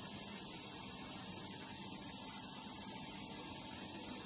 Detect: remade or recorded recorded